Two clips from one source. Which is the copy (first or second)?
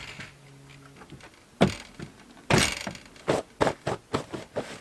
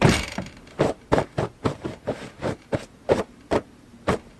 second